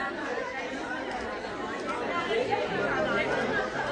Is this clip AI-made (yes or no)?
no